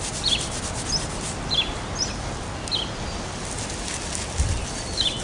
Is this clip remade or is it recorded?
recorded